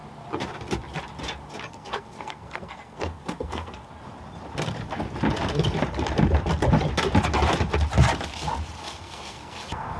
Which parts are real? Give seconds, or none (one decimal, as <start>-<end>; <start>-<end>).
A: 0.0-1.7; 3.8-8.8